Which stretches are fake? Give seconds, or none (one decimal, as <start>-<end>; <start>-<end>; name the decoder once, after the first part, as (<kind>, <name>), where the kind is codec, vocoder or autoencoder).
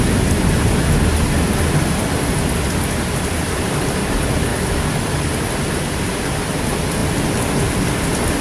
none